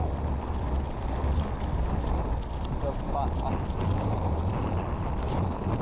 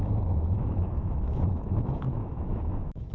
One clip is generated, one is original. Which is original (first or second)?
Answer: first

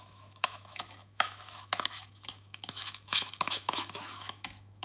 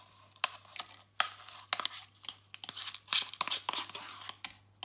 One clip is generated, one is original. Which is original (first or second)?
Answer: second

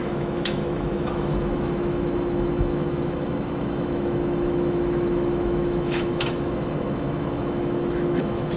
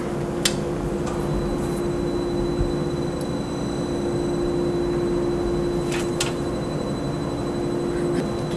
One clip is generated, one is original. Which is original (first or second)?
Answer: second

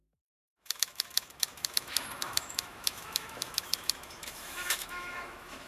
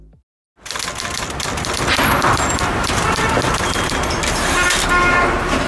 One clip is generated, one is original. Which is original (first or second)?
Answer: second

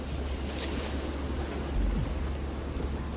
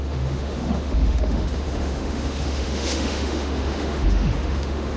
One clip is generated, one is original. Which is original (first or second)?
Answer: first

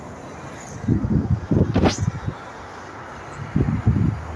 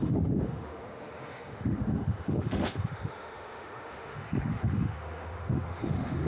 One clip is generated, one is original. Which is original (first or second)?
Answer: first